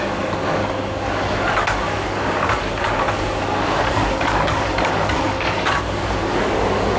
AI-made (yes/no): yes